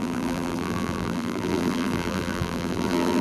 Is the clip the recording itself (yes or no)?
no